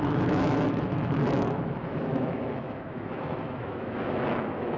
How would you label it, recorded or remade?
remade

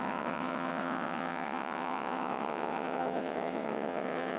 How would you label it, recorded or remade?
remade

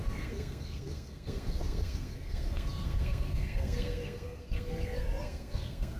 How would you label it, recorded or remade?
remade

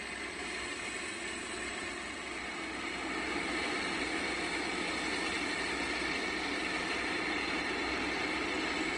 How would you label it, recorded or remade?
recorded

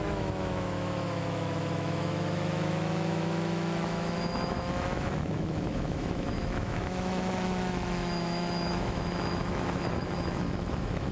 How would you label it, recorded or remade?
remade